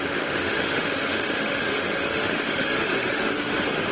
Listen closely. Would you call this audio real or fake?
fake